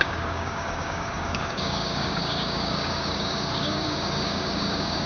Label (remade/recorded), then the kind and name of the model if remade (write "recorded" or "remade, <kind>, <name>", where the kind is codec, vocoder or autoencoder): remade, codec, DAC